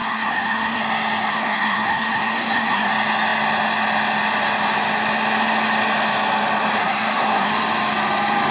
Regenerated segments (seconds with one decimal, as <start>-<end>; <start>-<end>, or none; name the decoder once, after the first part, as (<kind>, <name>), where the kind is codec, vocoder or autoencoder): 0.0-0.8 (codec, SNAC); 1.3-2.9; 6.8-7.5